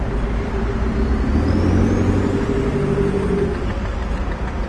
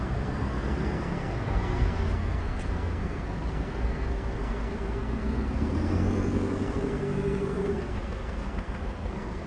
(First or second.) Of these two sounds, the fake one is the second